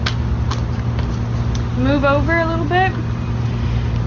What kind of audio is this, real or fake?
real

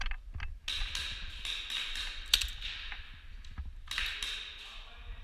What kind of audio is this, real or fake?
real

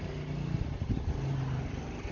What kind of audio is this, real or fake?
real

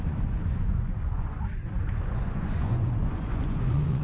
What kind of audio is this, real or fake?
fake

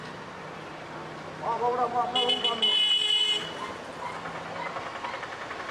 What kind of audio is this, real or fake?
real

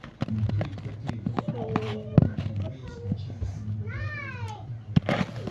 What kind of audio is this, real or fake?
real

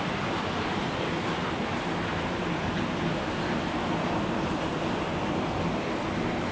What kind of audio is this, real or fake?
fake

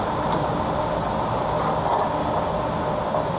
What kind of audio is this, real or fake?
real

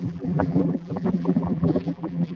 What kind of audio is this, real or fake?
fake